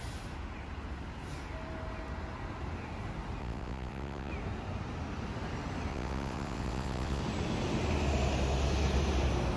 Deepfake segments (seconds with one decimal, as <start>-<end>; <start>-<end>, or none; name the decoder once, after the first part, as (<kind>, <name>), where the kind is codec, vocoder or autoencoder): 3.4-4.3 (vocoder, WaveNeXt); 5.9-7.2